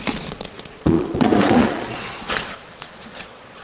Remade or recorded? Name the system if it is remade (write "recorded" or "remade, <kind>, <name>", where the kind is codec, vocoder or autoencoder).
remade, vocoder, Vocos